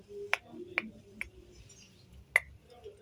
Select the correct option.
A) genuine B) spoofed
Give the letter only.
A